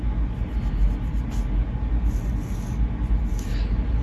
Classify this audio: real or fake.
real